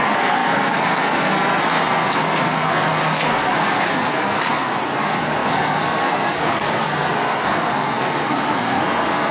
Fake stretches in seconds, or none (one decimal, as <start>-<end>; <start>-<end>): 0.0-9.3